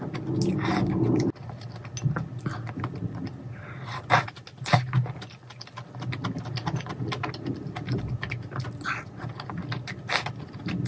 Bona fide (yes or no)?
yes